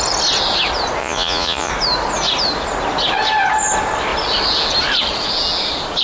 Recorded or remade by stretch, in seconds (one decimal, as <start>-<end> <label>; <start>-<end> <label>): 0.0-1.0 recorded; 1.0-1.7 remade; 1.7-6.0 recorded